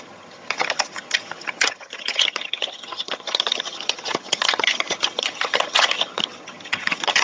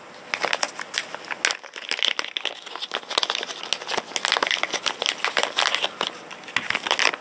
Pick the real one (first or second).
second